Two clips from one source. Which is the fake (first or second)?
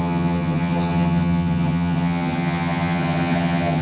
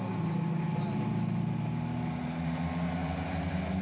first